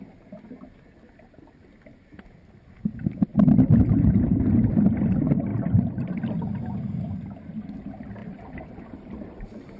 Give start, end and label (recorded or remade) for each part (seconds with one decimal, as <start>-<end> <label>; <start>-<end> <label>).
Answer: 0.0-3.3 recorded; 3.3-4.5 remade; 4.5-8.2 recorded; 8.2-9.1 remade; 9.1-9.8 recorded